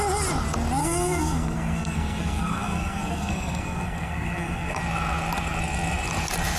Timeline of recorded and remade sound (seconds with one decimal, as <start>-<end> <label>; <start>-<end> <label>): 0.0-0.8 recorded; 0.8-4.8 remade; 4.8-6.6 recorded